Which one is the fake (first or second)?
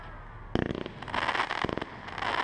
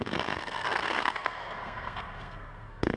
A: second